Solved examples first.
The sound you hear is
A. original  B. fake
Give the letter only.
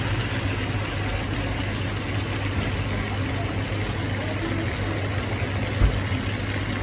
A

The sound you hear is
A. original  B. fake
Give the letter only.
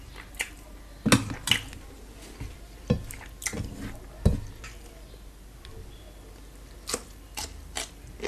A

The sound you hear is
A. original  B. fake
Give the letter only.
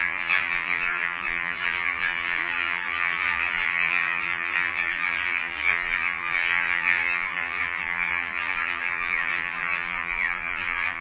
B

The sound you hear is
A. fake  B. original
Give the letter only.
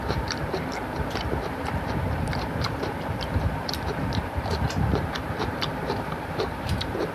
A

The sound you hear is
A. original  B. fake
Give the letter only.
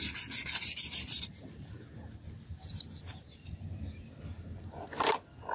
A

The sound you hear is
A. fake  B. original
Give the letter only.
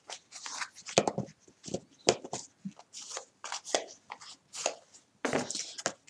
B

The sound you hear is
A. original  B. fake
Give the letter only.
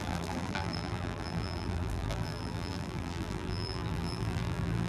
B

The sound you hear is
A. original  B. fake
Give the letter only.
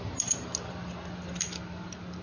A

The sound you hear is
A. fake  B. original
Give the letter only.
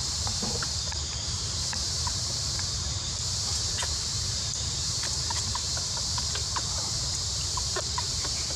A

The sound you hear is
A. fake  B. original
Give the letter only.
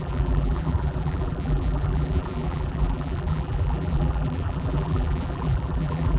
A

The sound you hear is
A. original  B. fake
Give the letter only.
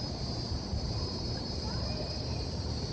B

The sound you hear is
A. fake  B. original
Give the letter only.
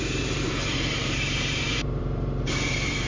A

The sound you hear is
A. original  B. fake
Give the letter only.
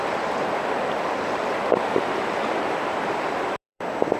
B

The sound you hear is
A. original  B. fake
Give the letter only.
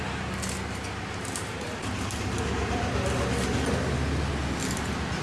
A